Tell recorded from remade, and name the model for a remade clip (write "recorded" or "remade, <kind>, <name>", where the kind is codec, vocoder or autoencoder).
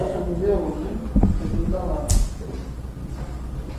recorded